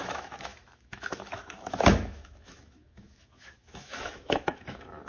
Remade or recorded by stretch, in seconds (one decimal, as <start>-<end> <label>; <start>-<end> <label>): 0.0-5.1 remade